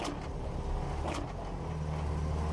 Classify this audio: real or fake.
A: real